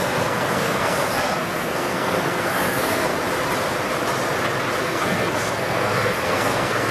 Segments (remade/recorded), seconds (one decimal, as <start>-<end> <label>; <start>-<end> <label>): 0.0-3.1 remade; 3.1-4.8 recorded; 4.8-6.9 remade